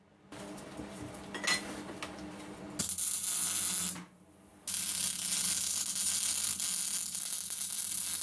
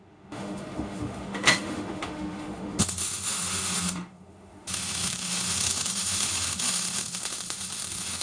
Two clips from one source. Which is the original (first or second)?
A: first